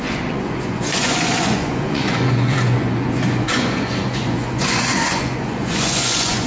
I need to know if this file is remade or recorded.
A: remade